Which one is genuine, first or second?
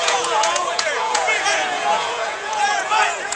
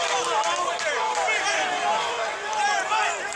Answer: second